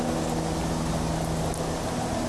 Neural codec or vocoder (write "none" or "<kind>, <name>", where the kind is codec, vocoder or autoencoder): none